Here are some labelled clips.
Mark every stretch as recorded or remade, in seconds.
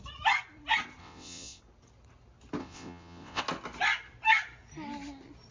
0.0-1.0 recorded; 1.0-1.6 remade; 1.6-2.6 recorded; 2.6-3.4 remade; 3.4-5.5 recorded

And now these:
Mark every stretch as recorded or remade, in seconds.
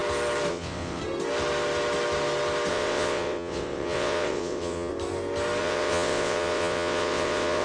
0.0-0.5 recorded; 0.5-1.0 remade; 1.0-2.7 recorded; 2.7-4.9 remade; 4.9-5.6 recorded; 5.6-7.6 remade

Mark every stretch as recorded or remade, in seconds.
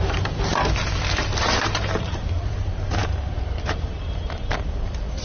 0.0-0.5 remade; 0.5-1.4 recorded; 1.4-5.2 remade